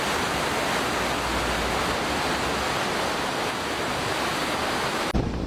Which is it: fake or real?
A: real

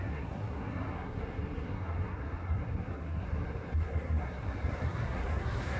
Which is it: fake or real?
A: fake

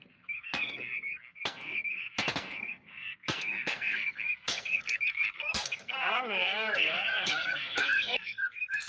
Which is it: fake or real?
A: fake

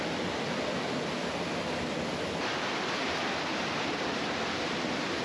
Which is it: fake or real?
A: real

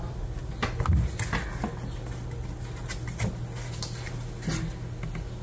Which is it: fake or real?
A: real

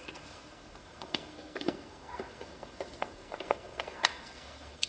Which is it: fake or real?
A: fake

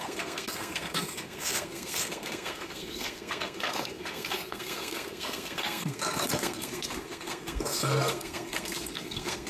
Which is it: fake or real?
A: fake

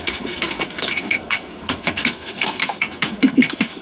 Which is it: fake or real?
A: fake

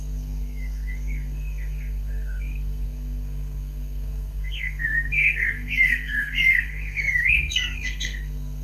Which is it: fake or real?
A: fake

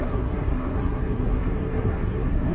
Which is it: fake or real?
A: fake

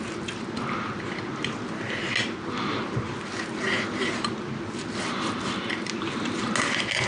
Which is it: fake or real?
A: real